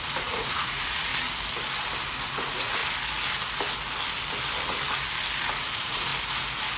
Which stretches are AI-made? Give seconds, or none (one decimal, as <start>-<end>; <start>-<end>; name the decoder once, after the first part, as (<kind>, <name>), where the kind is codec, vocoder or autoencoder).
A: 0.0-1.1 (vocoder, Vocos); 2.2-2.8; 5.5-6.1